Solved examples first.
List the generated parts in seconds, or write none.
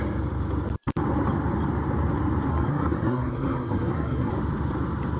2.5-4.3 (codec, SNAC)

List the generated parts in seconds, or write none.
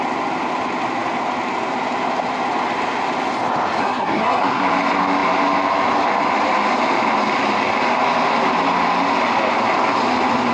3.8-4.6 (codec, SNAC)